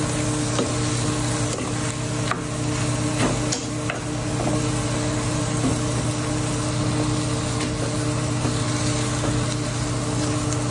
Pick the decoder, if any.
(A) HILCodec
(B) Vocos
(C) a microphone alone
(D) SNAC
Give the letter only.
C